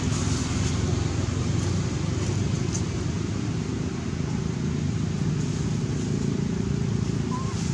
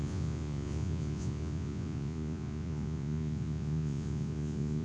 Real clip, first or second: first